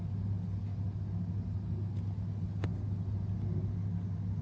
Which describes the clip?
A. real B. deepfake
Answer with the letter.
A